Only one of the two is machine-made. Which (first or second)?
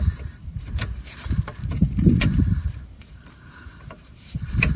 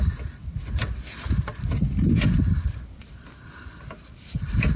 first